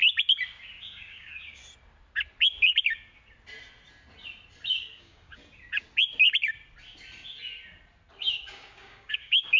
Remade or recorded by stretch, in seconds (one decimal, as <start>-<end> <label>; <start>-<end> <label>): 0.0-0.8 recorded; 0.8-1.6 remade; 1.6-4.7 recorded; 4.7-5.4 remade; 5.4-8.2 recorded; 8.2-9.6 remade

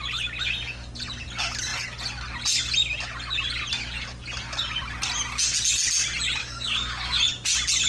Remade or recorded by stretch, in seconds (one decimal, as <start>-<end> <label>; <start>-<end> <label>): 0.0-6.4 recorded; 6.4-7.2 remade; 7.2-7.9 recorded

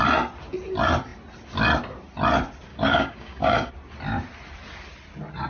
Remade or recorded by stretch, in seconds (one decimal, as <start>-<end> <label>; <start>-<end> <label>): 0.0-2.7 recorded; 2.7-3.7 remade; 3.7-5.5 recorded

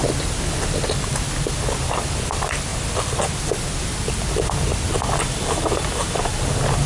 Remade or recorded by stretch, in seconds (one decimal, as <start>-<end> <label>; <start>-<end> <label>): 0.0-6.9 recorded

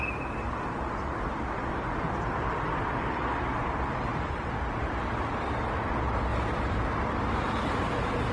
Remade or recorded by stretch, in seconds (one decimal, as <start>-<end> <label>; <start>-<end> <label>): 0.0-4.1 recorded; 4.1-5.1 remade; 5.1-6.3 recorded; 6.3-7.8 remade; 7.8-8.3 recorded

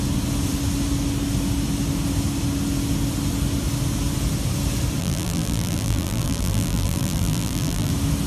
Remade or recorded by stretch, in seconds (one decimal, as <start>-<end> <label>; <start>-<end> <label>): 0.0-5.0 recorded; 5.0-7.9 remade; 7.9-8.3 recorded

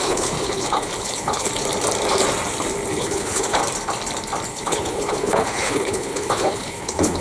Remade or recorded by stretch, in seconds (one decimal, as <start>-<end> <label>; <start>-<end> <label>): 0.0-1.5 remade; 1.5-2.9 recorded; 2.9-3.6 remade; 3.6-4.5 recorded; 4.5-7.2 remade